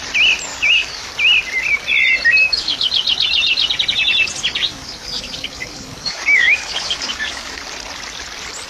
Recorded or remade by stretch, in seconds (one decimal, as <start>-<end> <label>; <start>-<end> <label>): 0.0-0.5 recorded; 0.5-1.1 remade; 1.1-2.4 recorded; 2.4-2.9 remade; 2.9-4.7 recorded; 4.7-7.6 remade; 7.6-8.7 recorded